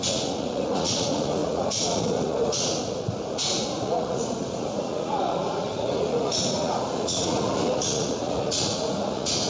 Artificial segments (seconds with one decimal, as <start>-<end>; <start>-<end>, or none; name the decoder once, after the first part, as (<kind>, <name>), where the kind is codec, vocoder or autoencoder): 0.0-9.5 (vocoder, Vocos)